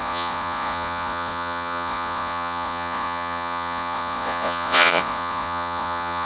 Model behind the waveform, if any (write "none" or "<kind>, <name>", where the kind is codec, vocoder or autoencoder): vocoder, Vocos